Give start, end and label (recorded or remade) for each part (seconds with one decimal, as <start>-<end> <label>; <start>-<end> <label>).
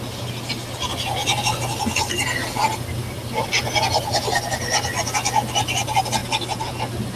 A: 0.0-7.2 recorded